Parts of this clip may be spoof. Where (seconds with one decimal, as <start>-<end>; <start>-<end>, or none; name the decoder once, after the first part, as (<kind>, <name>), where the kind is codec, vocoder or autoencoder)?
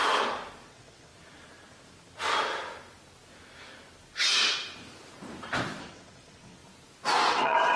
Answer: 0.7-1.1 (vocoder, WaveNeXt); 5.8-6.6; 7.3-7.8